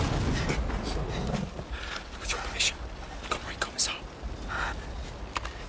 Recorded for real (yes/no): yes